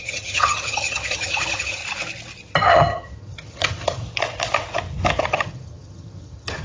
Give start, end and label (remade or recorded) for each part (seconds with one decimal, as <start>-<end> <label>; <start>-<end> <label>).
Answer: 0.0-1.8 remade; 1.8-2.6 recorded; 2.6-4.0 remade; 4.0-5.2 recorded; 5.2-6.6 remade